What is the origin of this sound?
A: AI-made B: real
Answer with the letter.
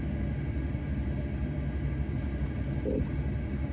B